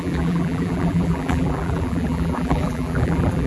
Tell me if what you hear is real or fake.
fake